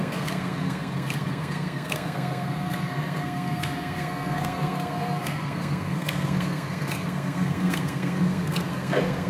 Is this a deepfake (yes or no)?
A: yes